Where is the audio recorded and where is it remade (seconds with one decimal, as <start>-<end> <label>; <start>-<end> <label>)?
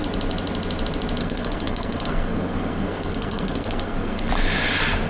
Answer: 0.0-1.2 recorded; 1.2-4.3 remade; 4.3-5.1 recorded